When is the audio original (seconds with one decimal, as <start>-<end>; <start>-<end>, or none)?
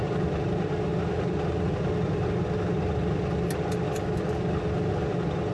0.0-5.5